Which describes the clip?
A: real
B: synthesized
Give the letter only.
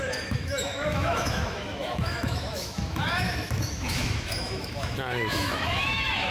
B